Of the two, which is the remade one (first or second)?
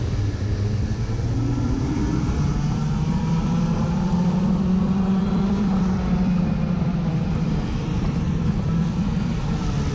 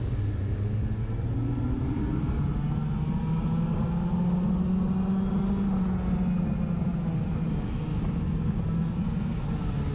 first